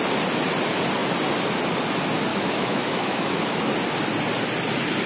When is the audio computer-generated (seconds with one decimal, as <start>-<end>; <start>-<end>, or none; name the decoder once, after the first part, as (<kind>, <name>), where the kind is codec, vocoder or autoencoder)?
2.3-3.6 (autoencoder, DAC-VAE)